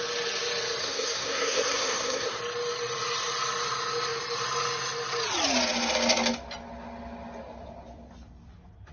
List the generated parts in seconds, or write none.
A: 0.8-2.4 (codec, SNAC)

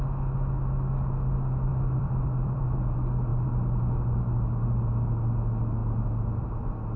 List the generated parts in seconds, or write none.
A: 1.7-2.9 (vocoder, BigVGAN v2)

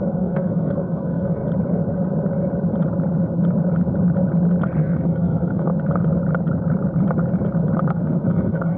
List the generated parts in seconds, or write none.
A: 0.0-1.4 (codec, SNAC); 4.8-5.7; 7.9-8.8